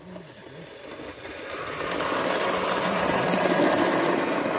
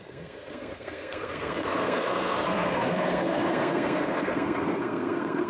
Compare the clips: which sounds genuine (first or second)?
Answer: first